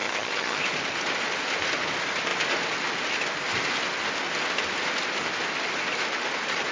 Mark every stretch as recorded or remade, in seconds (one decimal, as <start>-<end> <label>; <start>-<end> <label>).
0.0-0.6 remade; 0.6-6.7 recorded